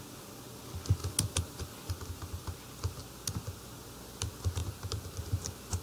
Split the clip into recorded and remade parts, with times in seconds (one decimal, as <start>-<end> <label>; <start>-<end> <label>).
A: 0.0-1.0 recorded; 1.0-1.9 remade; 1.9-4.6 recorded; 4.6-5.2 remade; 5.2-5.8 recorded

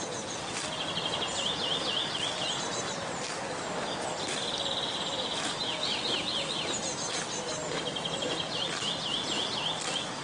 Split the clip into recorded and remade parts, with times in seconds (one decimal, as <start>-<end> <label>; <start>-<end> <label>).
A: 0.0-7.6 recorded; 7.6-8.5 remade; 8.5-10.2 recorded

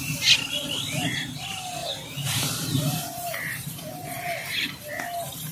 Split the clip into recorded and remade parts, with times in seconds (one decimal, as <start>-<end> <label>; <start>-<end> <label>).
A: 0.0-1.8 recorded; 1.8-4.9 remade; 4.9-5.5 recorded

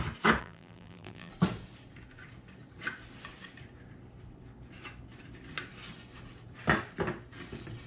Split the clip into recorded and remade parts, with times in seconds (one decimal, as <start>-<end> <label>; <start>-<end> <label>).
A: 0.0-0.4 recorded; 0.4-1.3 remade; 1.3-7.9 recorded

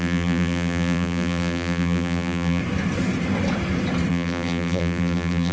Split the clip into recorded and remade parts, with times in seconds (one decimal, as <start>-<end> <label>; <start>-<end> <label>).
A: 0.0-2.6 remade; 2.6-4.1 recorded; 4.1-5.5 remade

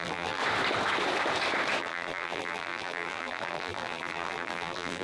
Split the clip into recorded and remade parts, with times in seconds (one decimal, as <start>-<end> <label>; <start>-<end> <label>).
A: 0.0-0.4 remade; 0.4-1.8 recorded; 1.8-5.0 remade